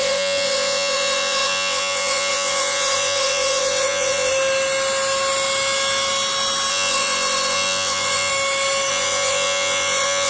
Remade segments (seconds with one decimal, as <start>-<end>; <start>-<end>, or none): 0.0-4.3; 6.7-8.3; 8.9-10.3